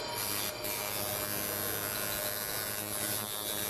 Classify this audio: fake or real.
real